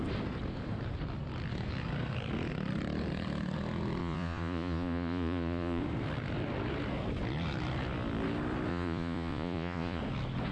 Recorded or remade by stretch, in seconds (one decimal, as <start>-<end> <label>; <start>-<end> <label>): 0.0-4.0 recorded; 4.0-5.8 remade; 5.8-8.7 recorded; 8.7-10.0 remade; 10.0-10.5 recorded